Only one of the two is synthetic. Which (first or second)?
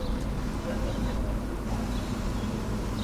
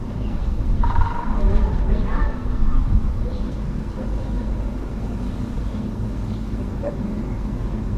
second